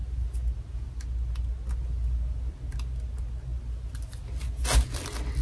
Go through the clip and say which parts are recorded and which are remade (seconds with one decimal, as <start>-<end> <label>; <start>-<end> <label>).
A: 0.0-5.4 recorded